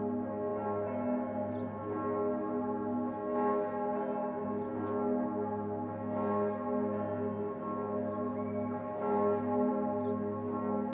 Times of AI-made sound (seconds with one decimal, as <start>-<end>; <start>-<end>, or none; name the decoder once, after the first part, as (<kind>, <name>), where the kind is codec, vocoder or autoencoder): none